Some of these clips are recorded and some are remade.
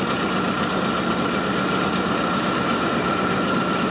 recorded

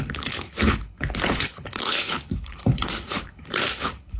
remade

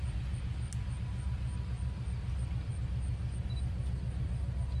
recorded